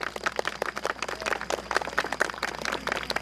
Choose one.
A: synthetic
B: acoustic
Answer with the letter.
B